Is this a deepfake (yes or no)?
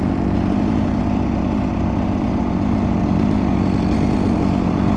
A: no